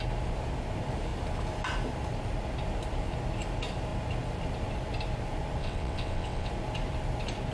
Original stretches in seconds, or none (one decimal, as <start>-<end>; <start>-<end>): 0.0-5.6; 6.5-7.5